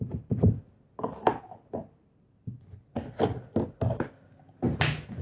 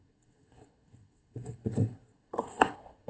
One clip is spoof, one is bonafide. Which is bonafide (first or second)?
first